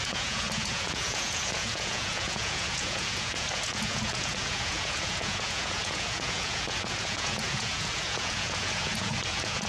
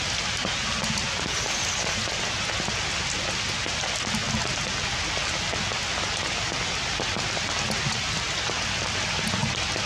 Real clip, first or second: second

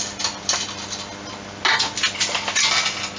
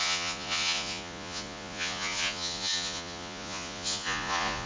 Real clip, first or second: first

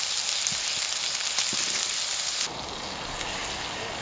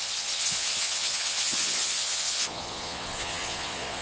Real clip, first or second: first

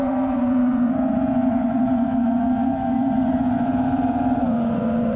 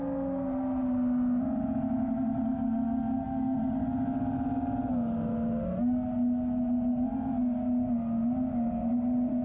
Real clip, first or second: second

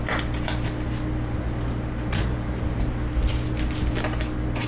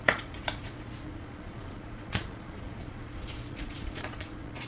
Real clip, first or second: first